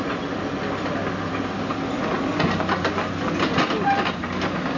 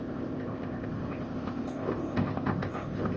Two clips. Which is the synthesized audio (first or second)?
second